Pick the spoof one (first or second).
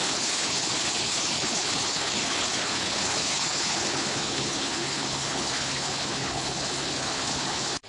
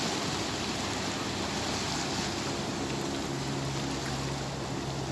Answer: first